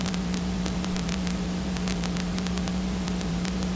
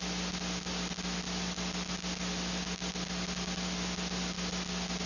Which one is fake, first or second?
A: first